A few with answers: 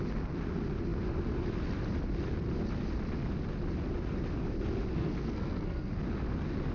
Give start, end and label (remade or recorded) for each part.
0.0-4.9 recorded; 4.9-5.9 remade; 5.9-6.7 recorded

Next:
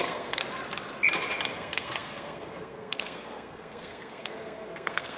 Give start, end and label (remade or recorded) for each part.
0.0-0.4 remade; 0.4-1.5 recorded; 1.5-5.2 remade